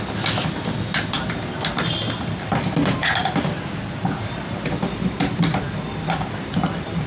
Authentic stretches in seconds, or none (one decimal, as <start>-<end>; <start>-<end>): 0.0-7.1